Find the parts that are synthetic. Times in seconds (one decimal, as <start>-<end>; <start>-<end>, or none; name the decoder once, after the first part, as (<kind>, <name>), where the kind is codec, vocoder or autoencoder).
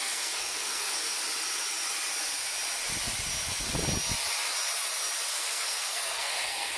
0.0-1.2 (codec, SNAC); 5.3-6.8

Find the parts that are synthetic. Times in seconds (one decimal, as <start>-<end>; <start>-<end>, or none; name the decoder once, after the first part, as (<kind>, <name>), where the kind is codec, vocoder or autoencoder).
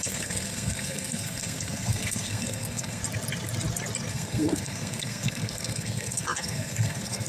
0.0-3.0 (codec, SNAC); 4.1-7.3